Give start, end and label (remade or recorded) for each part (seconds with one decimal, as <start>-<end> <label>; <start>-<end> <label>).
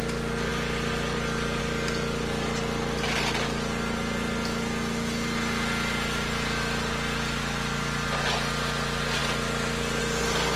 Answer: 0.0-10.6 recorded